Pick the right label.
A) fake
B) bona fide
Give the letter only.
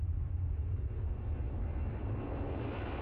B